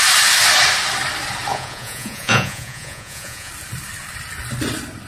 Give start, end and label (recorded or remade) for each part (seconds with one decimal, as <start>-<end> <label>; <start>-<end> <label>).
0.0-1.5 recorded; 1.5-3.5 remade; 3.5-5.1 recorded